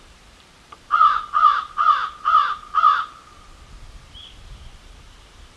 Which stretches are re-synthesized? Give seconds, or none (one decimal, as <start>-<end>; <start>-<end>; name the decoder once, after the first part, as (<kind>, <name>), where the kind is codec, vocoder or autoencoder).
0.0-2.0 (vocoder, BigVGAN v2); 4.0-5.6